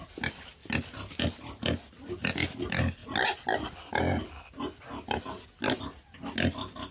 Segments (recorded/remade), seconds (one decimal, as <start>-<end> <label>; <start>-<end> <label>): 0.0-6.9 recorded